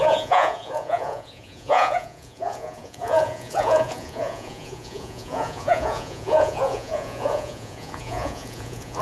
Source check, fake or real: fake